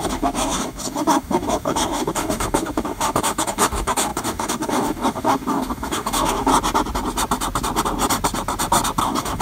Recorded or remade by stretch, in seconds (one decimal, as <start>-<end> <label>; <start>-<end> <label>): 0.0-6.5 remade; 6.5-9.0 recorded; 9.0-9.4 remade